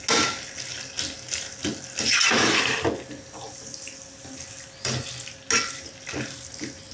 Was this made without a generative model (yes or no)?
yes